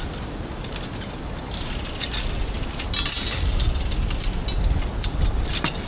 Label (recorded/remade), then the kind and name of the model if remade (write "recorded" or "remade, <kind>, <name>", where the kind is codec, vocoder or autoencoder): recorded